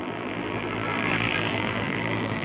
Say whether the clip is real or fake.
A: fake